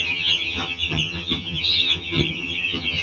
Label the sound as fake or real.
fake